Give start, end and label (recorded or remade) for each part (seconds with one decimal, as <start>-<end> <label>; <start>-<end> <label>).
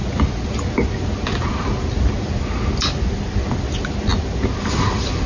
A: 0.0-5.3 recorded